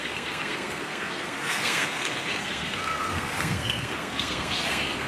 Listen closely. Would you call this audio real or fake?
fake